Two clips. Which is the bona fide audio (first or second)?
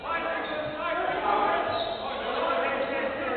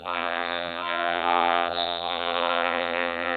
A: first